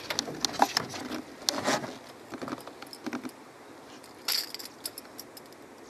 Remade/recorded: recorded